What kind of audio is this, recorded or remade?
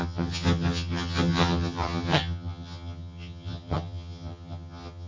remade